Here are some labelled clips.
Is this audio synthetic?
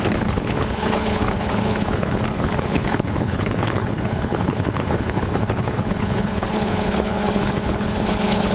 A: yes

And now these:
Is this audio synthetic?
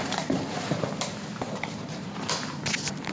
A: no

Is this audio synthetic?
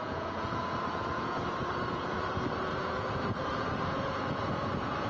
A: yes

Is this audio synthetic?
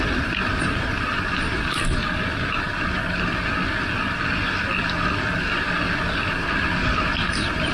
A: no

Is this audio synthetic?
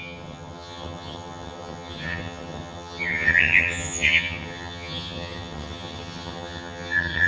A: yes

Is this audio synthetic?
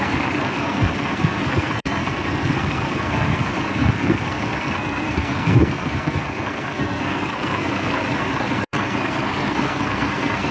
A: yes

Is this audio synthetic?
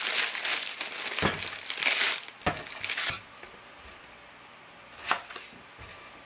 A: no